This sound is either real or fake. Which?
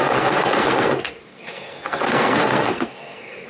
fake